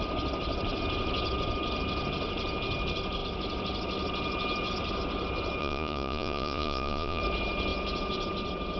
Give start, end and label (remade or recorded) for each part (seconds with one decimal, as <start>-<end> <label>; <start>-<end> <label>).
0.0-5.6 recorded; 5.6-7.2 remade; 7.2-8.8 recorded